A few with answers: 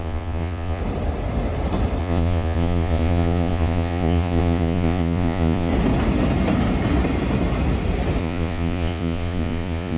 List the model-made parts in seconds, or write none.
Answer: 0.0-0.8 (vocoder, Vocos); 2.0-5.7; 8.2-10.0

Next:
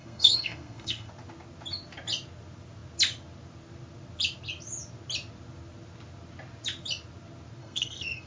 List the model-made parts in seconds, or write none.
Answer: 0.0-1.1 (codec, SNAC); 7.6-8.3